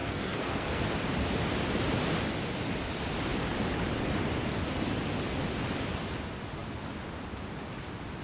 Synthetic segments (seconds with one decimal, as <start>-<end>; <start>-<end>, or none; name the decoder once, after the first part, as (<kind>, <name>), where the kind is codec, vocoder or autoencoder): 0.0-0.8 (codec, SNAC)

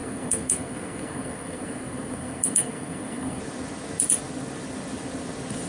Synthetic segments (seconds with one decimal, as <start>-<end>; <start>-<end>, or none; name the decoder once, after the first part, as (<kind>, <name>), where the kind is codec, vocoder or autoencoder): 0.0-3.4 (codec, SNAC)